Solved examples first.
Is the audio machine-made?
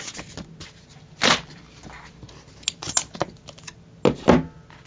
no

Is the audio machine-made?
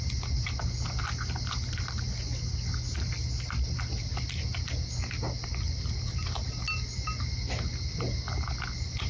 no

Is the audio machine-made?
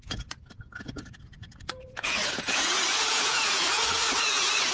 yes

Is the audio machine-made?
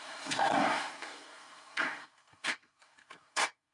yes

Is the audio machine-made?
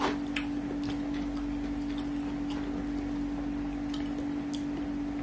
no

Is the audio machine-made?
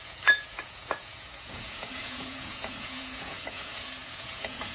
yes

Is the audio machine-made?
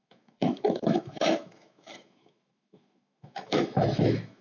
yes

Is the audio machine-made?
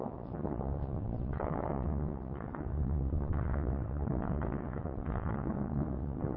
yes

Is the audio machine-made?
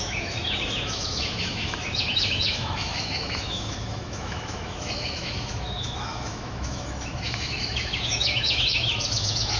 yes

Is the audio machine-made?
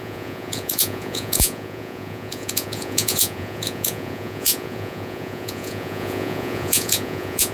yes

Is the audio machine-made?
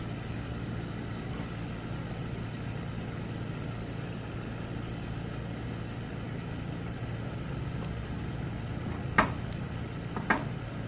no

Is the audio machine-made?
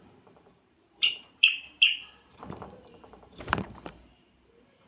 yes